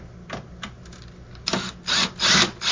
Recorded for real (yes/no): yes